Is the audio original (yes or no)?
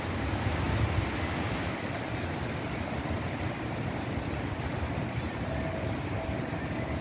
yes